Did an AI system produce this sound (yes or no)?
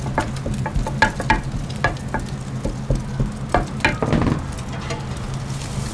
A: no